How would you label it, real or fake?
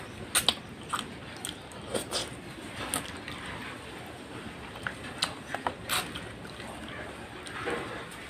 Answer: real